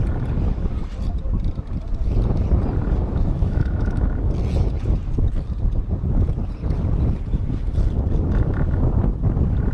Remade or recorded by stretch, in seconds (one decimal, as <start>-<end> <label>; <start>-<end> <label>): 0.0-3.0 recorded; 3.0-4.3 remade; 4.3-9.7 recorded